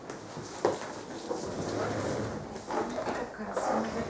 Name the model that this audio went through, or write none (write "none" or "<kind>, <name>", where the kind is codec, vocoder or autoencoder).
none